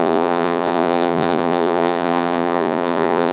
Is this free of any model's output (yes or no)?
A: no